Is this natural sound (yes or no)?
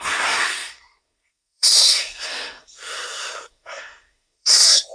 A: no